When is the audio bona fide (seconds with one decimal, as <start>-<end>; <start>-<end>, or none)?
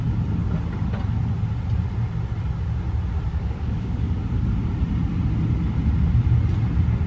0.0-3.3; 4.3-7.1